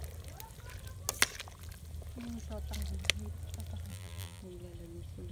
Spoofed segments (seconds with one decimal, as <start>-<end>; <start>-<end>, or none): 3.9-4.4